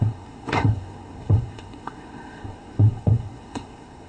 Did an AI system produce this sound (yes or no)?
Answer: yes